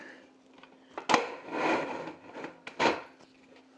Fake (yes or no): no